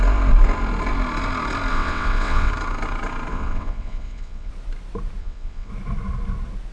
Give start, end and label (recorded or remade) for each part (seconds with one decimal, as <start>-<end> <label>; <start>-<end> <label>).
0.0-1.7 recorded; 1.7-2.5 remade; 2.5-3.3 recorded; 3.3-4.5 remade; 4.5-5.2 recorded; 5.2-5.7 remade; 5.7-6.7 recorded